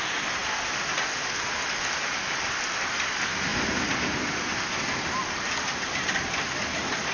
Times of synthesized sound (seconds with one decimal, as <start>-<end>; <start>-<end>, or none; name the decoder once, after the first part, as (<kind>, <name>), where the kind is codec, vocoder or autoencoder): none

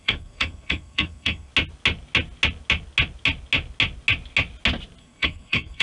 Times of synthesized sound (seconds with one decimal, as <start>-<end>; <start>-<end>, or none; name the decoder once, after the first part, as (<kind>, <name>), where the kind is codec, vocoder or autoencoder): 0.0-1.5 (codec, SNAC); 5.0-5.8